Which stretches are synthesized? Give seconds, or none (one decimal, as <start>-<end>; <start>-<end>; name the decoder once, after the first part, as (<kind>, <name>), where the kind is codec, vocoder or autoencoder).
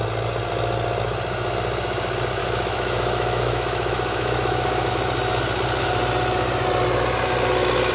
2.4-4.9 (autoencoder, DAC-VAE)